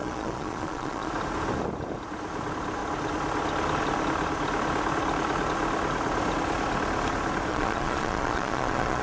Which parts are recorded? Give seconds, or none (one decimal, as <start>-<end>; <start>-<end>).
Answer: 1.1-7.5